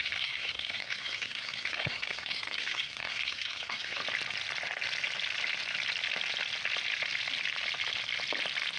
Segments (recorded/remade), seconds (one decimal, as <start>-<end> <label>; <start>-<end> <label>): 0.0-4.0 remade; 4.0-8.8 recorded